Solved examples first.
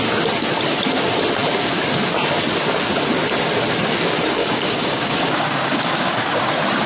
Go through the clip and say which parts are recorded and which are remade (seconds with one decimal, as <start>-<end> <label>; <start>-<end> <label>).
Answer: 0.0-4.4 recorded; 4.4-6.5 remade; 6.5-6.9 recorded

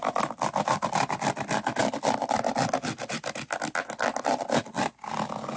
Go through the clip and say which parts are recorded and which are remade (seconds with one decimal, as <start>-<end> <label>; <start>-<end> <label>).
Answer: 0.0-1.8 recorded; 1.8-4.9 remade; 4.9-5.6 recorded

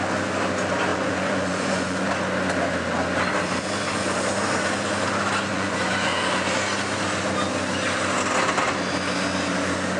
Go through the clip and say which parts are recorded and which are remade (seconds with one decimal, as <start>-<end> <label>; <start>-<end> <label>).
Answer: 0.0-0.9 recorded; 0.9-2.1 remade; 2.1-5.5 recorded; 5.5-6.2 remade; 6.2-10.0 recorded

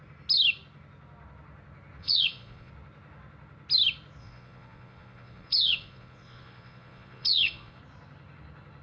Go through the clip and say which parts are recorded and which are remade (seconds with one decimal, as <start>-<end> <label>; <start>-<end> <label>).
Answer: 0.0-2.0 recorded; 2.0-2.7 remade; 2.7-4.2 recorded; 4.2-7.8 remade; 7.8-8.8 recorded